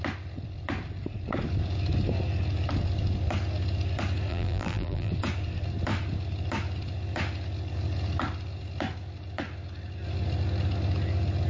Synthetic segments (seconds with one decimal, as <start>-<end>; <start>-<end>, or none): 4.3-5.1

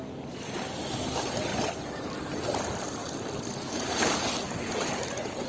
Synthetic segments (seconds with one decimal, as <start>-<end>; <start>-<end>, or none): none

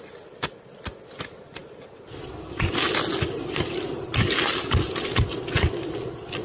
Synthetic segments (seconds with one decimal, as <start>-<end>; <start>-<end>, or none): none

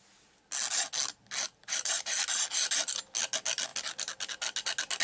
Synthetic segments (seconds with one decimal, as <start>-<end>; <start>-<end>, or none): 1.6-2.1